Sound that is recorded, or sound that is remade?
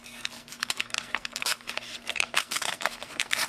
remade